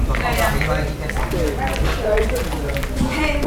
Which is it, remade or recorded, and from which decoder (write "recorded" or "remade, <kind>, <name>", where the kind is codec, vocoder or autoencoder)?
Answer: recorded